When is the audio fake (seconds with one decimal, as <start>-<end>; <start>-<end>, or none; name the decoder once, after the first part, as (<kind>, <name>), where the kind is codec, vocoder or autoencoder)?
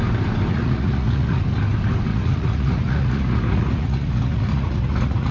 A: 0.5-1.4 (vocoder, Vocos); 2.1-5.3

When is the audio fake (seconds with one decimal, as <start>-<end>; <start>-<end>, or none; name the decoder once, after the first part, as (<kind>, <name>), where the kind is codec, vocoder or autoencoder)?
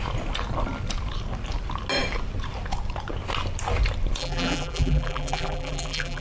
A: 4.2-6.2 (vocoder, BigVGAN v2)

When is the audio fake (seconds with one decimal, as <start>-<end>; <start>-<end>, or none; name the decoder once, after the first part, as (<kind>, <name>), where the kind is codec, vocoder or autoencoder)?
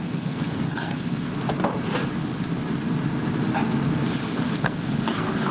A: 0.0-1.3 (codec, SNAC); 4.6-5.5